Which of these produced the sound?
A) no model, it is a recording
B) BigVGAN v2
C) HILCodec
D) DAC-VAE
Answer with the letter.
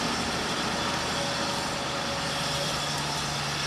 A